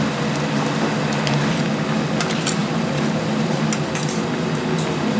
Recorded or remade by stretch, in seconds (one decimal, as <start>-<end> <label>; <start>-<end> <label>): 0.0-2.6 recorded; 2.6-3.6 remade; 3.6-5.2 recorded